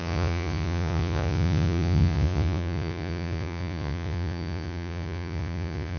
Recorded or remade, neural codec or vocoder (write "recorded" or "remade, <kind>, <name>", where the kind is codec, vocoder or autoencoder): remade, vocoder, Vocos